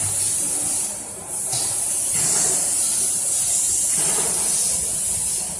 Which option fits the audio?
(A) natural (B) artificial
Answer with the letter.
A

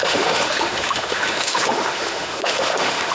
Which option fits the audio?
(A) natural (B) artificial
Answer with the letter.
B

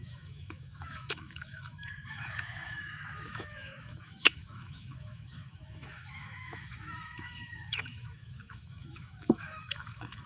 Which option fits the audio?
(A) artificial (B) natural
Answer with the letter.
A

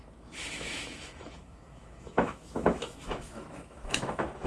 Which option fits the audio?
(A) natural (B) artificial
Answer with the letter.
B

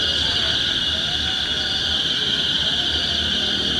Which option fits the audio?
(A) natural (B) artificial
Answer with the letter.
A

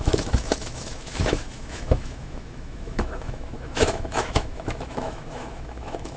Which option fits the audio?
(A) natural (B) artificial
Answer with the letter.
B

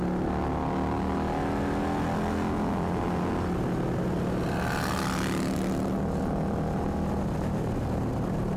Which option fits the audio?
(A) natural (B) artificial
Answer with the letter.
A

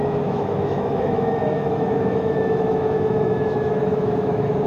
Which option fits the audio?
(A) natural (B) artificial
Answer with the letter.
B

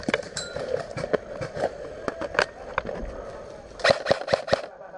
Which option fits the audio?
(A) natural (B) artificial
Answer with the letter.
A